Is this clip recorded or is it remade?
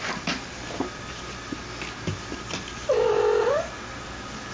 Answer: recorded